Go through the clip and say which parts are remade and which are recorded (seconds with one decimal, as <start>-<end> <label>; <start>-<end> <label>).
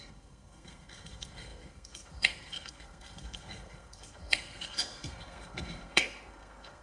0.0-6.8 remade